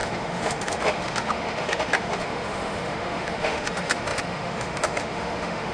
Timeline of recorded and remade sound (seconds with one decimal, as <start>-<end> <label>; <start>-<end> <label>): 0.0-5.7 remade